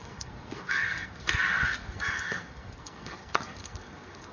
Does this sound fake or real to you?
fake